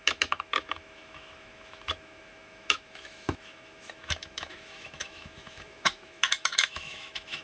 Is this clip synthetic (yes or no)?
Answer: yes